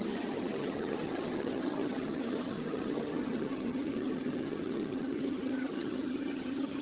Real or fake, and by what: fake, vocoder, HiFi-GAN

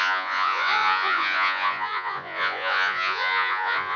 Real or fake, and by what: fake, vocoder, Vocos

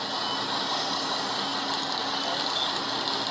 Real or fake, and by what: real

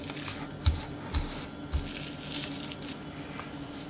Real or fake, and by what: real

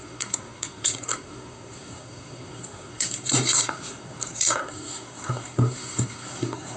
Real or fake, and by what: fake, codec, SNAC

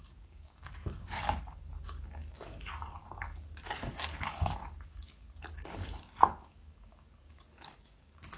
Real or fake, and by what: fake, codec, DAC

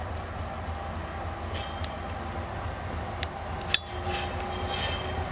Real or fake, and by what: real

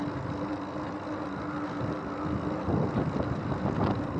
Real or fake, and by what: real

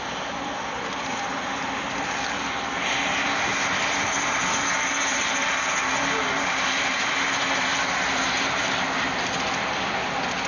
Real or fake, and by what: real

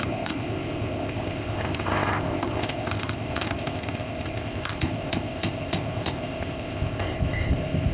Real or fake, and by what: fake, codec, ZipCodec